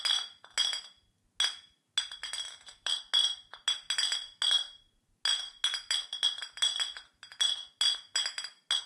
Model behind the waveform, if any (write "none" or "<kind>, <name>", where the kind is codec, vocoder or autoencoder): none